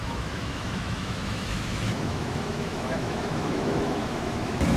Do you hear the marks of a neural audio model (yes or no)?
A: yes